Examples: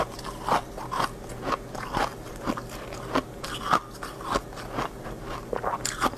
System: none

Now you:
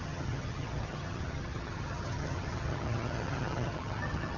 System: vocoder, HiFi-GAN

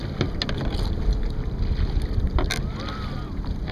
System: none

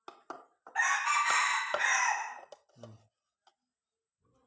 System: none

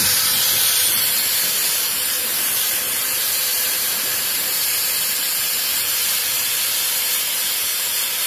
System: vocoder, BigVGAN v2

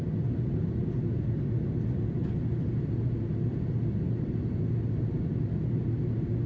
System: none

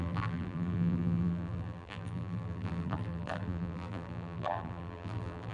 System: vocoder, BigVGAN v2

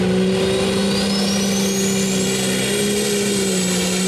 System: none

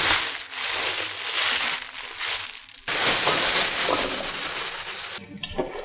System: none